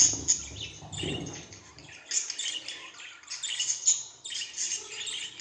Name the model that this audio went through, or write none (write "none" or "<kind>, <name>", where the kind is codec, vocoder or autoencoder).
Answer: none